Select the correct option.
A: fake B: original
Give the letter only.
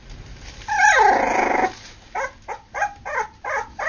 B